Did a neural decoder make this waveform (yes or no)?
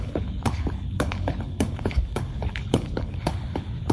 yes